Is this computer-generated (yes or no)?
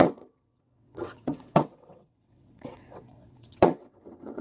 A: yes